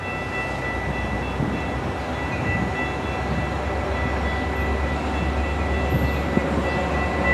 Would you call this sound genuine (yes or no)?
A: yes